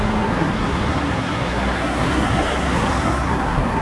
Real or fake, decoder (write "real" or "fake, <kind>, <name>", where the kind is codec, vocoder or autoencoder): fake, codec, SNAC